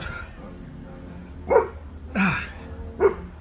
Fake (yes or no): no